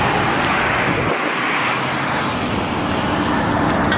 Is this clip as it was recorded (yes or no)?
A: yes